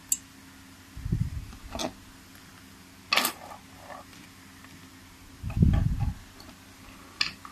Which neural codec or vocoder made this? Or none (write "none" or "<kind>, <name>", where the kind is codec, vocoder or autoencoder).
none